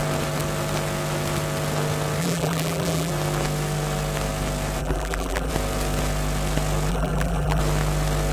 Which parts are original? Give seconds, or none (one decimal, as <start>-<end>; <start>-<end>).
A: 0.0-2.2; 3.1-4.8; 5.5-6.9; 7.6-8.3